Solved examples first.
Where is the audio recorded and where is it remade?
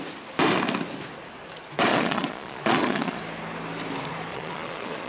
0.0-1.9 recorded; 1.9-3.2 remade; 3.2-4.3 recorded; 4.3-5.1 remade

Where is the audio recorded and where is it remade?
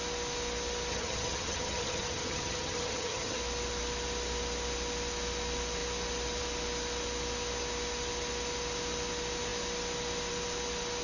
0.0-0.9 recorded; 0.9-3.4 remade; 3.4-11.0 recorded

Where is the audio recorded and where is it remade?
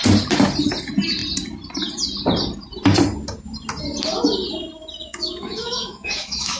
0.0-5.1 recorded; 5.1-6.6 remade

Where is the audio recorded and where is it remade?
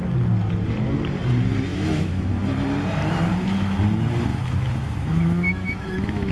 0.0-1.7 recorded; 1.7-2.3 remade; 2.3-3.3 recorded; 3.3-3.8 remade; 3.8-4.3 recorded; 4.3-6.3 remade